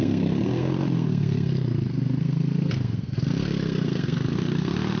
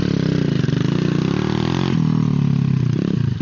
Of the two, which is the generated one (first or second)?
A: first